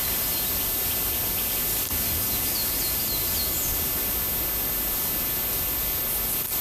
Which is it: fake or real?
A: real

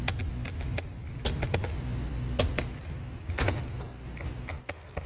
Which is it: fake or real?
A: real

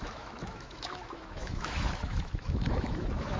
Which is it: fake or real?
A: fake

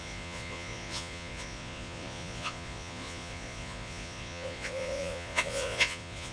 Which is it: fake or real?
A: fake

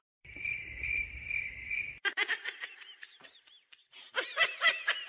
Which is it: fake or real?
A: fake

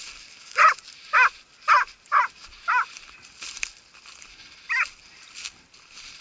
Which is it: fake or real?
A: real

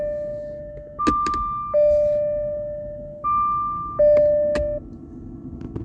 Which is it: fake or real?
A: real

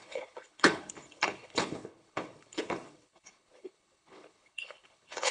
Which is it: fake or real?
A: fake